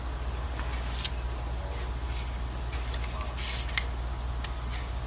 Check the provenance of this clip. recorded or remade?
recorded